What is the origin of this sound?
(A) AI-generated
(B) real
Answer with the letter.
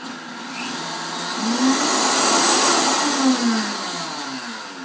B